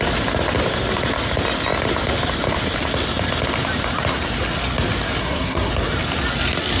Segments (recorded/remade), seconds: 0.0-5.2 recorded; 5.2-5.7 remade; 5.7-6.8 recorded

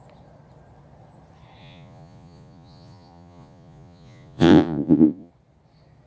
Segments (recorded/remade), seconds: 0.0-1.6 recorded; 1.6-5.3 remade; 5.3-6.1 recorded

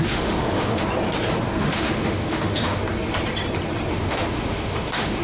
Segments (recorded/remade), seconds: 0.0-0.8 remade; 0.8-1.6 recorded; 1.6-2.8 remade; 2.8-3.9 recorded; 3.9-5.2 remade

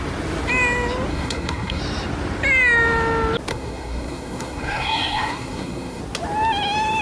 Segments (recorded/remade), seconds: 0.0-1.1 recorded; 1.1-1.8 remade; 1.8-3.5 recorded; 3.5-6.0 remade; 6.0-7.0 recorded

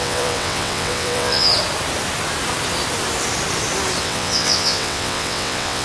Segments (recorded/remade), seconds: 0.0-1.5 remade; 1.5-4.0 recorded; 4.0-5.8 remade

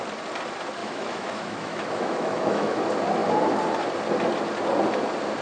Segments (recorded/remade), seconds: 0.0-0.8 recorded; 0.8-2.8 remade; 2.8-5.4 recorded